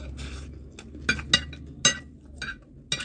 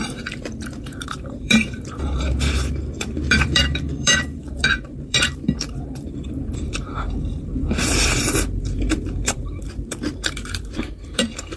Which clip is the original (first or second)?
first